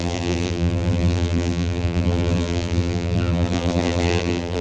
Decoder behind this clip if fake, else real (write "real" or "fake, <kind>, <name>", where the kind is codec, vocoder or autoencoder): fake, vocoder, BigVGAN v2